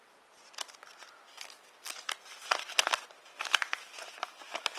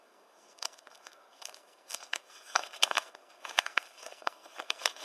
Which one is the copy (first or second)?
second